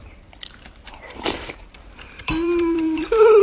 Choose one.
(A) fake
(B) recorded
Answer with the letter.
A